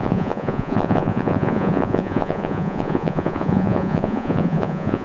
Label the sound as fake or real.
fake